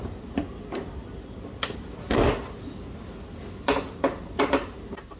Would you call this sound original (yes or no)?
yes